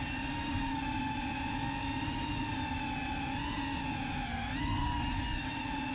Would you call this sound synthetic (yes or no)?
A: no